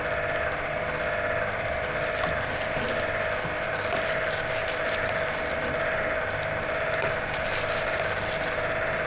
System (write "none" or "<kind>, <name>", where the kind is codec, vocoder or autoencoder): none